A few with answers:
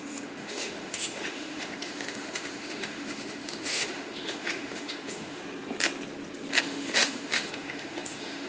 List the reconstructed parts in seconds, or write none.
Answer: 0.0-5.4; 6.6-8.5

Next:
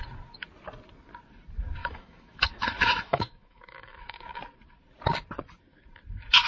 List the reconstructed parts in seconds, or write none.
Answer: 1.8-4.4

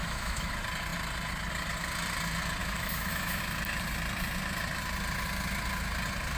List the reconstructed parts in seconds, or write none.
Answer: 0.0-0.5; 2.6-3.4

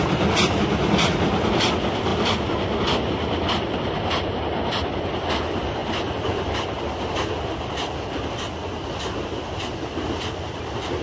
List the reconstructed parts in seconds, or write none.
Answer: none

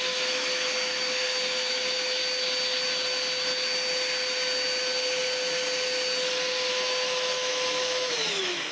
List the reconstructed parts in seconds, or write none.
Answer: 0.0-2.2; 6.7-8.7